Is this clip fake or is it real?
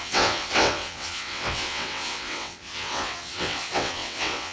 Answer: fake